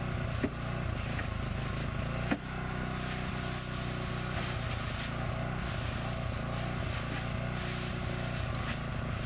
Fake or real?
real